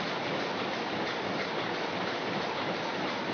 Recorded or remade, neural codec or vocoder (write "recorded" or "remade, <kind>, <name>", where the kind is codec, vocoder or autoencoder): remade, vocoder, BigVGAN v2